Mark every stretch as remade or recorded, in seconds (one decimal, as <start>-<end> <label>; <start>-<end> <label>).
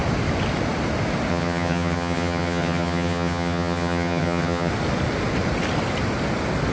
0.0-1.3 recorded; 1.3-4.7 remade; 4.7-6.7 recorded